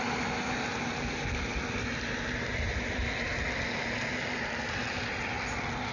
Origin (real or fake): real